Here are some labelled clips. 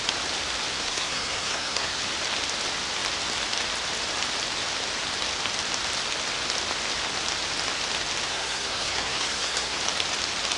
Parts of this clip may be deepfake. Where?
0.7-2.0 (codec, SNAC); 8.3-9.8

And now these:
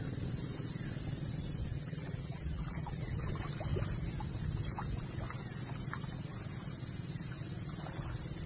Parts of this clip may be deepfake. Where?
1.7-3.0 (vocoder, BigVGAN v2)

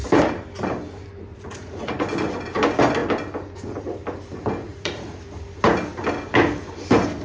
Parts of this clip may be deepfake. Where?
1.3-1.9 (vocoder, Vocos); 4.6-5.2

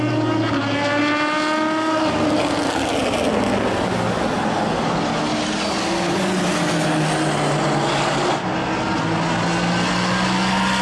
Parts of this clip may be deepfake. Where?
none